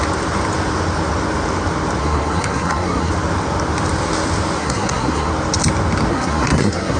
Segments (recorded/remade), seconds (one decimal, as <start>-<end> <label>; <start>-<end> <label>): 0.0-2.0 recorded; 2.0-3.1 remade; 3.1-4.6 recorded; 4.6-5.3 remade; 5.3-6.1 recorded; 6.1-7.0 remade